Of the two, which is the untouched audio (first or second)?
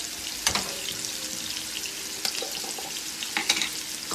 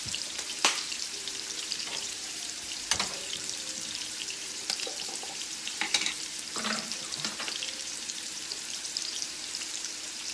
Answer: first